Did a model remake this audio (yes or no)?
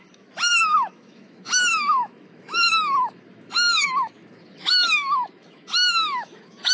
yes